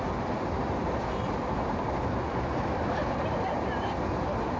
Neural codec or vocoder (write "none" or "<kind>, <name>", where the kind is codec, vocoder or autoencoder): none